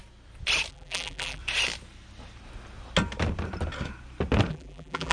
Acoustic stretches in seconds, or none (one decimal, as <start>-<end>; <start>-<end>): 0.0-0.7; 1.4-4.5